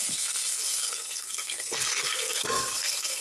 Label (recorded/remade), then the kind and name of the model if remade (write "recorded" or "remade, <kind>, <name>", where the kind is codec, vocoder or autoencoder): remade, codec, SNAC